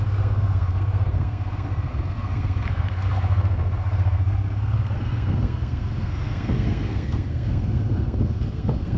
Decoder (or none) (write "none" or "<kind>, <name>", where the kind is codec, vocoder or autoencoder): codec, SNAC